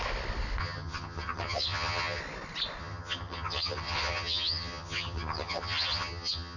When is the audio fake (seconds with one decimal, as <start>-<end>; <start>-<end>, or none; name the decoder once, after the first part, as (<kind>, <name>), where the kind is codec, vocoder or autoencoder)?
0.6-2.2 (vocoder, HiFi-GAN); 2.8-6.6